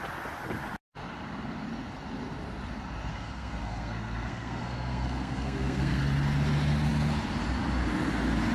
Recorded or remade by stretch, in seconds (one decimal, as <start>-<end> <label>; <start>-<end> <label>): 0.0-3.1 recorded; 3.1-6.0 remade; 6.0-8.5 recorded